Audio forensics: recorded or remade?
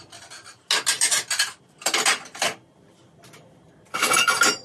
recorded